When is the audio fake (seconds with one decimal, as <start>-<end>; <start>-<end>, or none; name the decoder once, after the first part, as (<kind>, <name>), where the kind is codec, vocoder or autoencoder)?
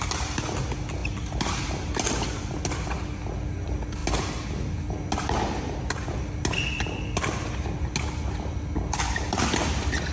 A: none